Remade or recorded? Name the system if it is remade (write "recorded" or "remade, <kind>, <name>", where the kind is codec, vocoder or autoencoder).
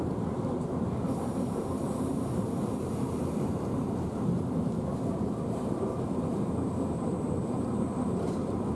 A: remade, vocoder, BigVGAN v2